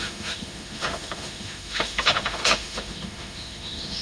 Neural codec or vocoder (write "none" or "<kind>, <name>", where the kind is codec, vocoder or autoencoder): autoencoder, DAC-VAE